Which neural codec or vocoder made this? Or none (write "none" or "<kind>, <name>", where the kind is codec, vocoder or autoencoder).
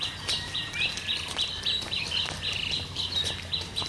none